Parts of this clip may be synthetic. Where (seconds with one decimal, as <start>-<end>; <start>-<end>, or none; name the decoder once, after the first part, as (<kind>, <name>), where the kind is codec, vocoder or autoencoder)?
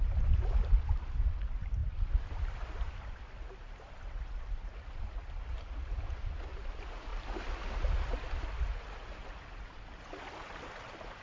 1.8-3.9 (vocoder, BigVGAN v2)